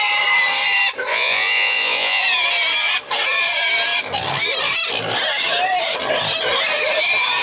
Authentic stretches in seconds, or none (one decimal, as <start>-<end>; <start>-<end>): 0.0-1.1; 2.2-7.4